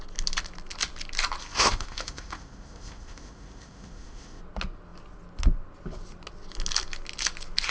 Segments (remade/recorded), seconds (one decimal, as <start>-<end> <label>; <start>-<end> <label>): 0.0-1.4 recorded; 1.4-4.4 remade; 4.4-7.7 recorded